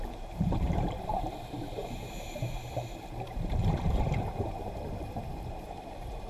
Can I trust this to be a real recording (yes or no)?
no